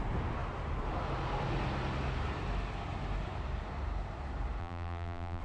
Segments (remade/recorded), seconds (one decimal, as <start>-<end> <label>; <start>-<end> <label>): 0.0-4.6 recorded; 4.6-5.4 remade